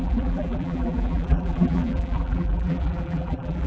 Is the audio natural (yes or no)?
no